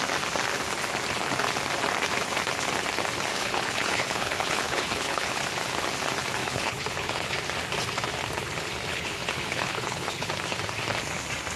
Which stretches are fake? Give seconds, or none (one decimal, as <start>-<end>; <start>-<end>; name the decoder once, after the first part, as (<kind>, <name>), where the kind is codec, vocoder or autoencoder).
3.3-5.4 (codec, HILCodec); 6.4-7.3; 8.9-10.3